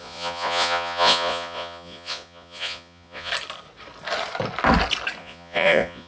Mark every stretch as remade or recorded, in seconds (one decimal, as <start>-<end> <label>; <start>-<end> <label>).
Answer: 0.0-3.3 remade; 3.3-5.2 recorded; 5.2-6.1 remade

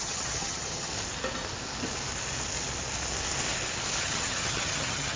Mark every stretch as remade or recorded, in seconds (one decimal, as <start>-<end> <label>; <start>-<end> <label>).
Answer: 0.0-0.9 remade; 0.9-4.0 recorded; 4.0-5.2 remade

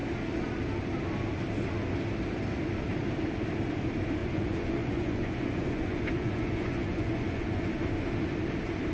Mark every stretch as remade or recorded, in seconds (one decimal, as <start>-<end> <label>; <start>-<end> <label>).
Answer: 0.0-4.2 recorded; 4.2-7.7 remade; 7.7-8.9 recorded

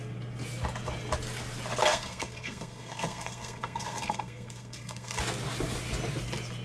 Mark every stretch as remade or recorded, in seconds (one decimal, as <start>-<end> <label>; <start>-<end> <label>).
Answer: 0.0-1.9 recorded; 1.9-5.2 remade; 5.2-6.6 recorded

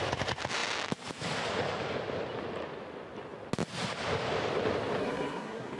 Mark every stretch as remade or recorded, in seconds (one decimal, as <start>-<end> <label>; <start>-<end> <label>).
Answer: 0.0-5.0 recorded; 5.0-5.8 remade

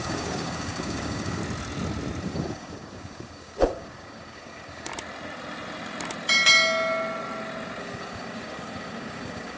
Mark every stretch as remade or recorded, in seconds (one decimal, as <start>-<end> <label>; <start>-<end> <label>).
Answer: 0.0-1.4 remade; 1.4-2.2 recorded; 2.2-4.9 remade; 4.9-7.8 recorded; 7.8-9.6 remade

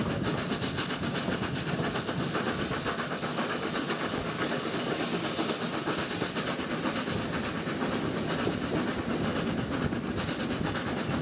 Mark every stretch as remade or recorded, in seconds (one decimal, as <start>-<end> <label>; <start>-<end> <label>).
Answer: 0.0-3.4 recorded; 3.4-5.0 remade; 5.0-11.2 recorded

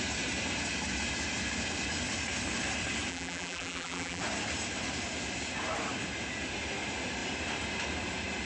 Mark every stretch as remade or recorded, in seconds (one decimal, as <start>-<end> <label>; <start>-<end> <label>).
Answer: 0.0-3.1 recorded; 3.1-4.2 remade; 4.2-8.5 recorded